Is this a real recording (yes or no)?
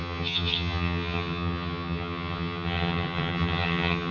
no